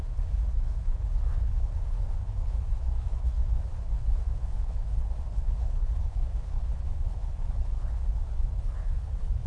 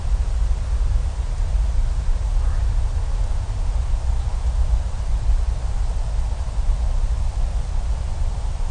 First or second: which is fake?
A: first